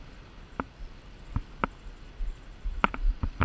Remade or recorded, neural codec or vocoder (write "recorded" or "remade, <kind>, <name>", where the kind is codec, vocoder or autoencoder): recorded